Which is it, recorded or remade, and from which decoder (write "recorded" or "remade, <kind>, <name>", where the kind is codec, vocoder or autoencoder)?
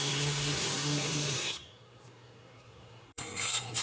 remade, codec, SNAC